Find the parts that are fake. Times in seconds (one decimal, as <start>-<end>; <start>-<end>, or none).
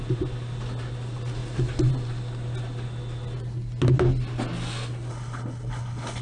5.1-6.2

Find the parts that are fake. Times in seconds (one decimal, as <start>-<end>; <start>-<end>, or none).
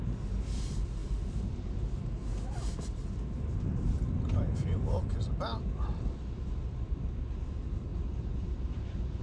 0.0-9.2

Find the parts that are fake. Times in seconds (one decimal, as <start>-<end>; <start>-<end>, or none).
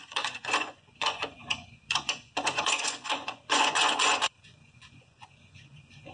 0.0-6.1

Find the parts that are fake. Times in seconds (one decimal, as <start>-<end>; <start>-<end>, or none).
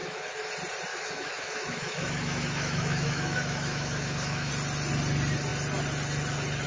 0.0-0.5; 0.9-4.5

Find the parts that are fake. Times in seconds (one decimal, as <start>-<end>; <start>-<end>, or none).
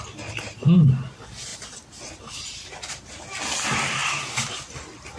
0.0-1.5; 2.7-4.0; 4.6-5.2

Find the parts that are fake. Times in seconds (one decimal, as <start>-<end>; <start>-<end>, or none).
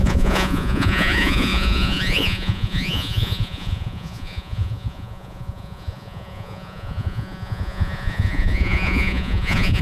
0.0-9.8